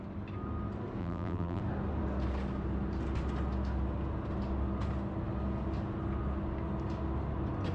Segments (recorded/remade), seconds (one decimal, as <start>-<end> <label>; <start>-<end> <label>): 0.0-1.0 recorded; 1.0-1.6 remade; 1.6-7.7 recorded